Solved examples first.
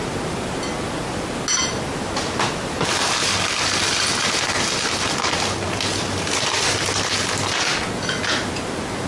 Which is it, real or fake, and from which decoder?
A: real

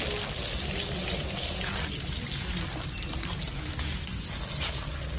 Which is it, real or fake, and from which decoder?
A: real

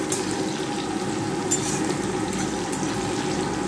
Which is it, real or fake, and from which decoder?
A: real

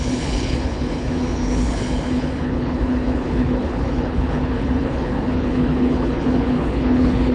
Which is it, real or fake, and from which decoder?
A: fake, codec, HILCodec